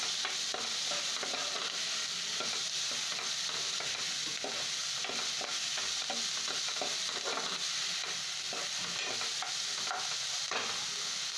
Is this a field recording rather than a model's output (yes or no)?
yes